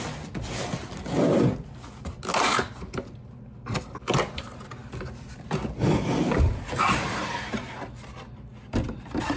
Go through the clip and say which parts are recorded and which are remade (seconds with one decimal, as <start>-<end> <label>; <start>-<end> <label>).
0.0-4.8 recorded; 4.8-8.1 remade; 8.1-8.5 recorded; 8.5-9.4 remade